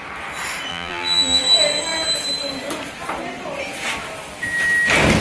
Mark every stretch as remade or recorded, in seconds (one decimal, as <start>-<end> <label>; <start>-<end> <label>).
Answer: 0.0-0.7 recorded; 0.7-1.4 remade; 1.4-5.2 recorded